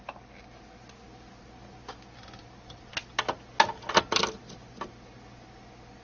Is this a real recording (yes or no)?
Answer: yes